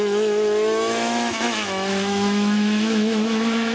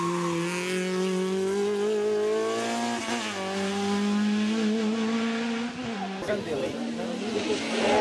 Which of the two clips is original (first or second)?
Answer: second